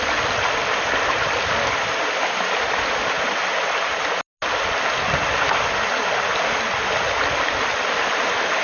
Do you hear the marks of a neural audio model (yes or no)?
no